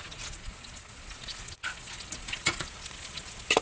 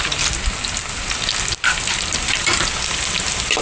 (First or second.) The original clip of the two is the second